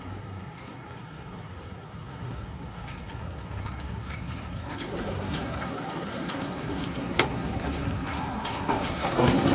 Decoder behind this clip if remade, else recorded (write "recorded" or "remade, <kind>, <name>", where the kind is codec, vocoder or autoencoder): remade, codec, SNAC